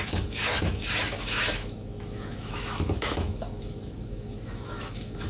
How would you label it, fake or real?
fake